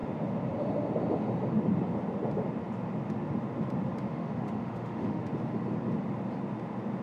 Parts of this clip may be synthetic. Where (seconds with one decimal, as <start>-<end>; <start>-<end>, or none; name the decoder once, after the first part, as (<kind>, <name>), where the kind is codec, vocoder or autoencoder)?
4.1-5.2 (autoencoder, DAC-VAE)